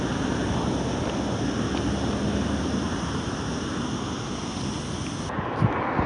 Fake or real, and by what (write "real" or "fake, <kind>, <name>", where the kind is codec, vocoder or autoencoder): real